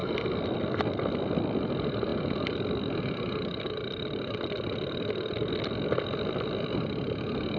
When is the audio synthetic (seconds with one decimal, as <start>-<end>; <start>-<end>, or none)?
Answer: none

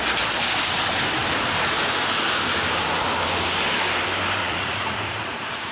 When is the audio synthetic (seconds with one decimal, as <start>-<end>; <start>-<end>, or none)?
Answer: 4.4-5.7